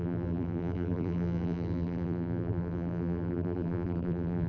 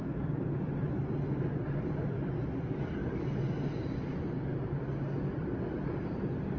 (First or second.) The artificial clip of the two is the first